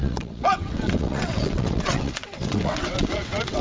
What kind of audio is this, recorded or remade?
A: remade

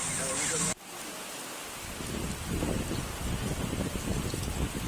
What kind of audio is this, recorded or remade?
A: recorded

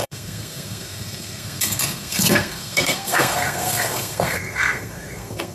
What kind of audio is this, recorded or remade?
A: remade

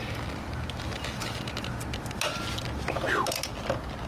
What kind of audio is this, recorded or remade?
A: recorded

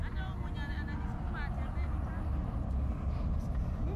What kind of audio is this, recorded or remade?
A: recorded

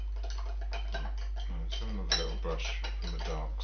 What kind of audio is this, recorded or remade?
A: recorded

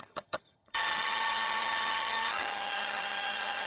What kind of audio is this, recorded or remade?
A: remade